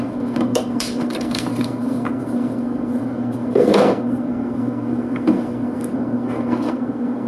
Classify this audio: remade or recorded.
remade